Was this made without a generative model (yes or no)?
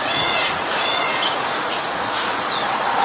no